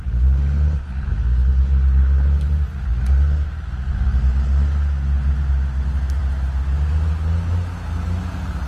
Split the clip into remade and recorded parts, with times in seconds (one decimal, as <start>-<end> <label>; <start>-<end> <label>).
0.0-8.7 recorded